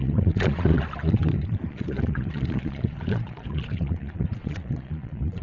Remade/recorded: remade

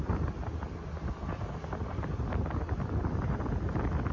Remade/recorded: recorded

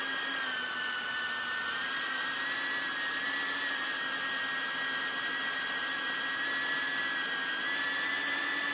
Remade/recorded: recorded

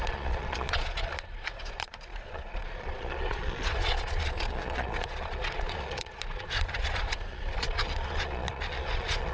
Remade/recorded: remade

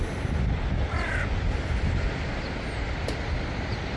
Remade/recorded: recorded